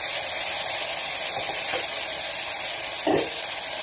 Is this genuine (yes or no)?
yes